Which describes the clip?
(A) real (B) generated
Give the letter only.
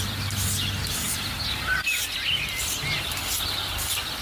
A